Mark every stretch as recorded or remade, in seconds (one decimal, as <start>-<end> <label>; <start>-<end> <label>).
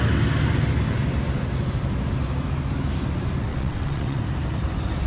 0.0-3.5 recorded; 3.5-4.2 remade; 4.2-5.1 recorded